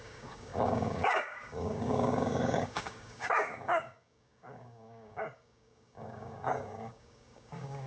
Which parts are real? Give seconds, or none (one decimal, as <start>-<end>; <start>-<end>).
none